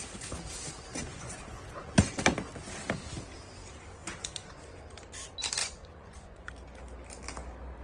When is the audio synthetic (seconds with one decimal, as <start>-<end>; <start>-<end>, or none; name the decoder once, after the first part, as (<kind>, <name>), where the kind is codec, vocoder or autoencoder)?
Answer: 1.1-1.9 (vocoder, Vocos); 4.0-4.6; 5.6-6.5